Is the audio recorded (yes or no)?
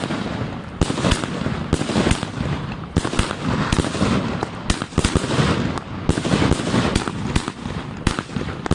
yes